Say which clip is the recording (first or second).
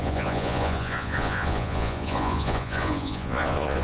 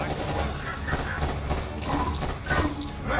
second